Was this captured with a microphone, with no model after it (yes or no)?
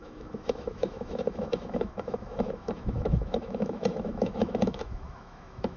no